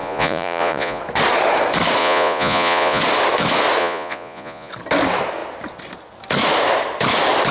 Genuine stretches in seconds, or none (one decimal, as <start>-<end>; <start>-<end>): 1.0-2.0; 3.0-3.8; 4.7-7.5